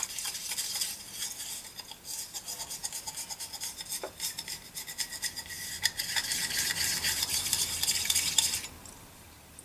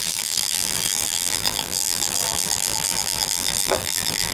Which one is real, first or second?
first